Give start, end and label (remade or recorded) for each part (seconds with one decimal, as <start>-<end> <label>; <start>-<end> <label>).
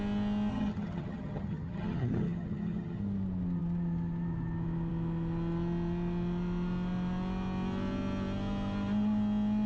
0.0-0.5 recorded; 0.5-3.0 remade; 3.0-9.7 recorded